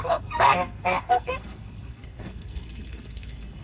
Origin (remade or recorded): remade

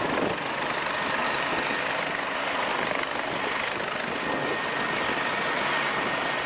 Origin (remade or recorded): recorded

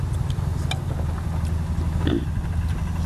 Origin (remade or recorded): recorded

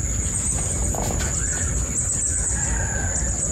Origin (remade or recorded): recorded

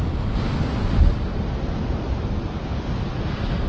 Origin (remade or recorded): recorded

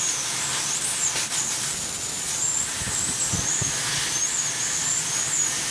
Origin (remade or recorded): recorded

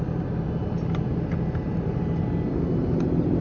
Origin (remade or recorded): recorded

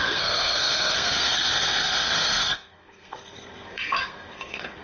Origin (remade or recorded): remade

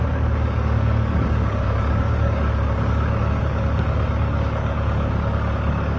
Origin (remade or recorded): remade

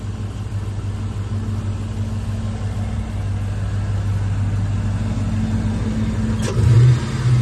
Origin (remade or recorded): recorded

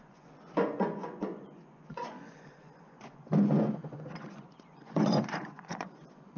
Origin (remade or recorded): remade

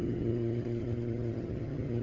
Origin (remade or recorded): remade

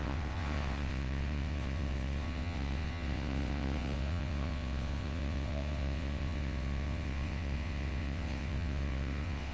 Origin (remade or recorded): remade